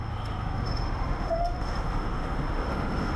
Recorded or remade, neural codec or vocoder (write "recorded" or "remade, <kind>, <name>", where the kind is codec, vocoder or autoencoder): remade, autoencoder, DAC-VAE